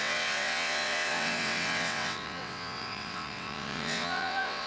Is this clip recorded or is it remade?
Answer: remade